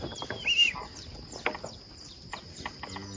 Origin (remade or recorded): recorded